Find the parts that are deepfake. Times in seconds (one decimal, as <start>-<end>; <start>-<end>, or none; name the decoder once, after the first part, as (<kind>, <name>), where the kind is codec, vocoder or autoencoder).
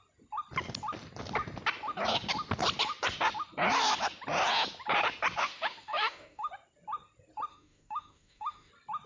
5.4-6.5 (autoencoder, DAC-VAE); 7.5-8.7